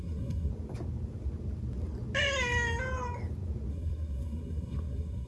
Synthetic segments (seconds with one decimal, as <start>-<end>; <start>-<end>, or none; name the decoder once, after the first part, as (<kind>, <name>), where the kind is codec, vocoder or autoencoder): 0.0-0.5 (codec, SNAC); 3.7-5.3